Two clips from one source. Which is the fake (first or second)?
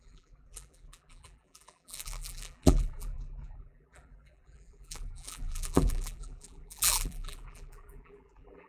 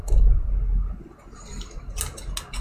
first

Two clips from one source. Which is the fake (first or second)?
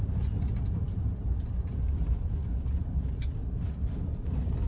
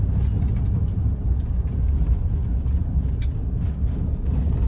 first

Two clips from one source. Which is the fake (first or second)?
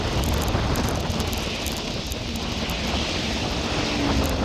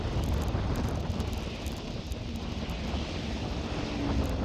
second